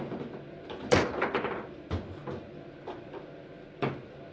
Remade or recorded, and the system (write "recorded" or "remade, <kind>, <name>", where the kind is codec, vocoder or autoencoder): recorded